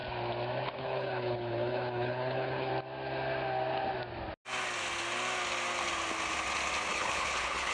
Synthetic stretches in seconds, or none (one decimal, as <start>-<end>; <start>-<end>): 0.8-2.7; 6.9-7.7